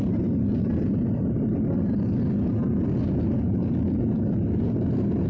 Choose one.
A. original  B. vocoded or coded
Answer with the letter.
B